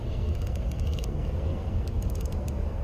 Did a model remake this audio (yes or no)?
yes